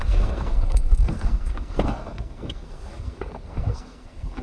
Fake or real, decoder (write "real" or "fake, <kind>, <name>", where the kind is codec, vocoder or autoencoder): fake, codec, SNAC